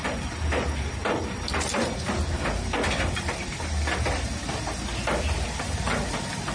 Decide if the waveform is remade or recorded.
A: recorded